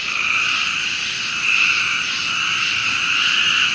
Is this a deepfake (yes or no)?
yes